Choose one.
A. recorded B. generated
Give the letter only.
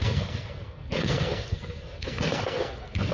B